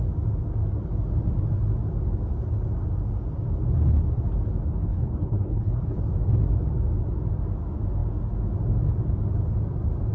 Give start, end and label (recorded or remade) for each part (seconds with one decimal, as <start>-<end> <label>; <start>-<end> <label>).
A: 0.0-4.9 recorded; 4.9-6.0 remade; 6.0-10.1 recorded